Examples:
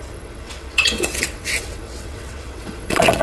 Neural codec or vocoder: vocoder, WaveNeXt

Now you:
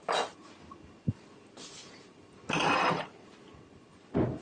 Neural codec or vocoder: none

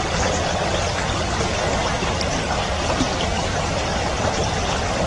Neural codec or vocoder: none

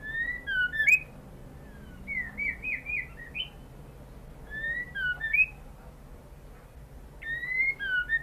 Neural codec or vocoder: none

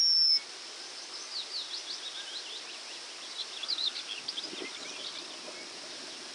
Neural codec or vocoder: none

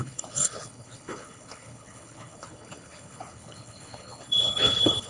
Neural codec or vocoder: codec, HILCodec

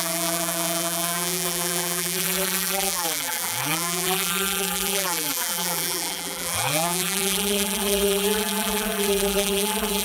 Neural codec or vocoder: vocoder, BigVGAN v2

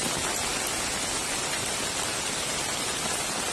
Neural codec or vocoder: none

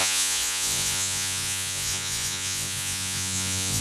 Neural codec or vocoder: vocoder, Vocos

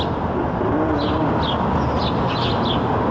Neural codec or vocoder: none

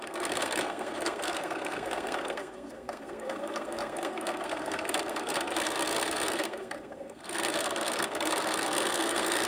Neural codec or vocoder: codec, SNAC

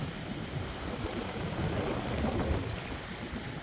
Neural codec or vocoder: none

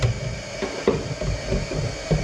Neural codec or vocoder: none